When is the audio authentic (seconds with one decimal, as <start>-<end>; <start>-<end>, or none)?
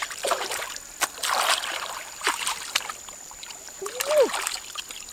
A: 0.7-1.2; 4.3-5.1